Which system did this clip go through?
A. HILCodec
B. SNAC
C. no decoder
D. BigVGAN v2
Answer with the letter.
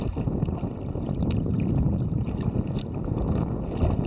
C